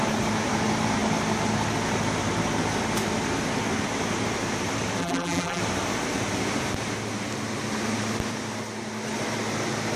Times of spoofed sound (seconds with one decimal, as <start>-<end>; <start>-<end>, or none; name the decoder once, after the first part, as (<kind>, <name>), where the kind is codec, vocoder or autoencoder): 5.0-5.6 (vocoder, BigVGAN v2)